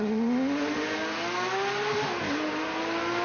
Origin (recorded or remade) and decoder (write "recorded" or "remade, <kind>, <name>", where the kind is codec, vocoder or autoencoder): recorded